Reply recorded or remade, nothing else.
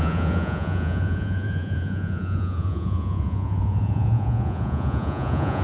remade